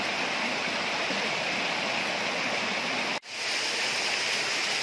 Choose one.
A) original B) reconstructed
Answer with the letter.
A